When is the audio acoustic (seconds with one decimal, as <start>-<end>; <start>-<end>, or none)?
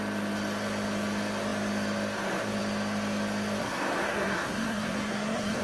0.0-3.6